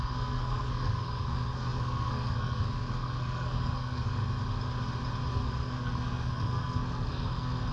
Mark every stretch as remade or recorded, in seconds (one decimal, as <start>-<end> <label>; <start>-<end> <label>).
0.0-4.2 remade; 4.2-5.3 recorded; 5.3-7.7 remade